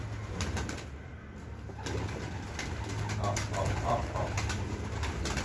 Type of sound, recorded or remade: recorded